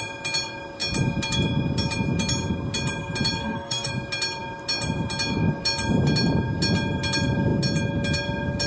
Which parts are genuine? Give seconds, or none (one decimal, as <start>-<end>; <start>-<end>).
0.0-3.4; 3.9-8.7

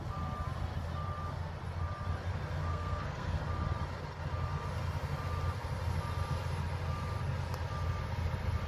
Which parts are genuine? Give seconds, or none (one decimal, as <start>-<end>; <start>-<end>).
0.0-2.7; 3.4-8.7

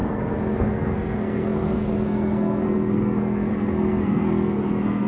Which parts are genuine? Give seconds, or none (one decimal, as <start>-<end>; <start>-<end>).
none

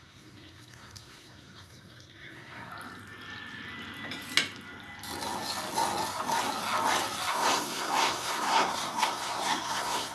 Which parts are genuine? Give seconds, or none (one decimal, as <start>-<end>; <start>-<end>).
2.7-7.3

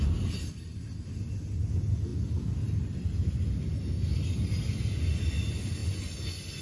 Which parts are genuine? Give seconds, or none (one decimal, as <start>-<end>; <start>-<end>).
0.0-6.6

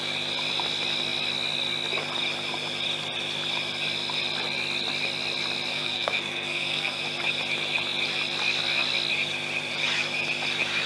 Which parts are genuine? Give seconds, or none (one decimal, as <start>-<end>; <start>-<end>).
0.0-5.7; 7.0-10.9